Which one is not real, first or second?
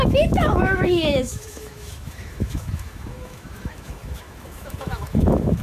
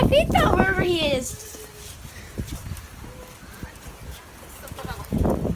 first